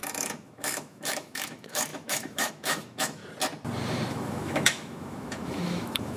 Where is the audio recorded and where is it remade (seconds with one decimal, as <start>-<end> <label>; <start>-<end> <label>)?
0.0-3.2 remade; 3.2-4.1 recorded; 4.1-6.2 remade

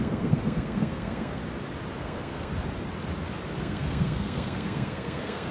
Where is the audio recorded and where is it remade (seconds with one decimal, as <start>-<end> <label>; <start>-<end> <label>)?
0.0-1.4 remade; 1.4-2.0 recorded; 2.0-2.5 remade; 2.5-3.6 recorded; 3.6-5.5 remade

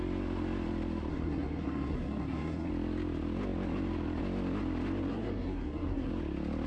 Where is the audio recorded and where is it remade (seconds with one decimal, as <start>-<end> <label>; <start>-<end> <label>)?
0.0-1.1 recorded; 1.1-2.7 remade; 2.7-5.1 recorded; 5.1-6.1 remade; 6.1-6.7 recorded

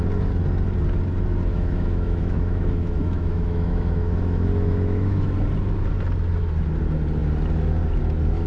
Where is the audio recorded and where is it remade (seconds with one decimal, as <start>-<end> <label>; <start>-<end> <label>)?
0.0-1.5 recorded; 1.5-5.3 remade; 5.3-8.5 recorded

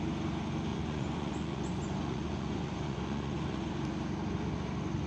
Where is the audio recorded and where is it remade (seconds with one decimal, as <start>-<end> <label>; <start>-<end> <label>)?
0.0-0.7 recorded; 0.7-3.7 remade; 3.7-5.1 recorded